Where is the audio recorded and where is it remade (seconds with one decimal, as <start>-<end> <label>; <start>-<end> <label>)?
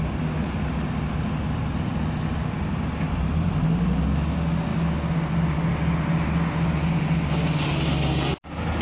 0.0-8.8 recorded